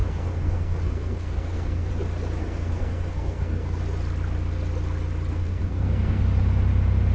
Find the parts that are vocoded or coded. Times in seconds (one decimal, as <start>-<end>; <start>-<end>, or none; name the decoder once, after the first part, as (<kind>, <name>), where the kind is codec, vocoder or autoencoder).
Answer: 0.0-1.9 (codec, SNAC); 2.4-3.8; 5.3-6.2